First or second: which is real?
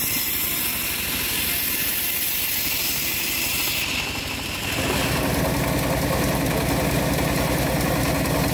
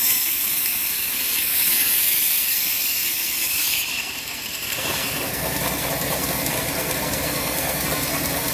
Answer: first